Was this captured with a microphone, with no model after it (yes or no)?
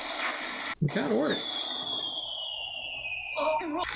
yes